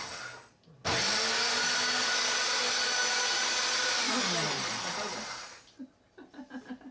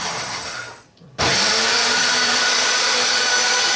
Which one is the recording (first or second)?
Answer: first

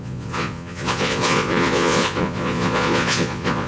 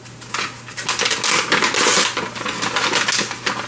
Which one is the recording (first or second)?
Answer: second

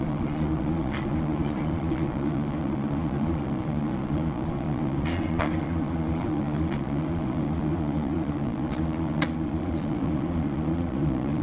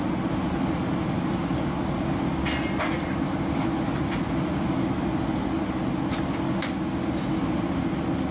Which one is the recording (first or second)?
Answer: second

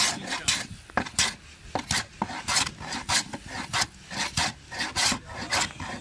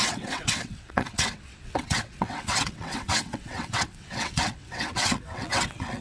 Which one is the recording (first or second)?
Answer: first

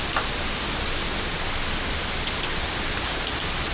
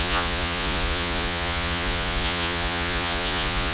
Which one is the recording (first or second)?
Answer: first